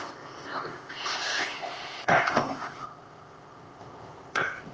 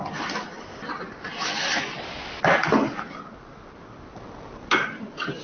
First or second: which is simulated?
first